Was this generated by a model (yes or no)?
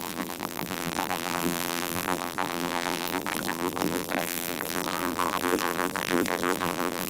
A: yes